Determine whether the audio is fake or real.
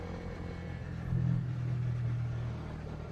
real